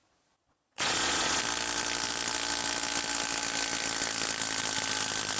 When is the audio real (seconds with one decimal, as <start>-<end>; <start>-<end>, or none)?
1.4-5.4